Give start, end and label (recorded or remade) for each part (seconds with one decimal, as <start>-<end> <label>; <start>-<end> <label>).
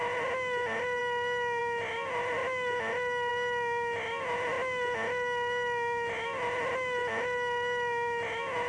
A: 0.0-8.7 recorded